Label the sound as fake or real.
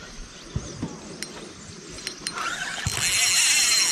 real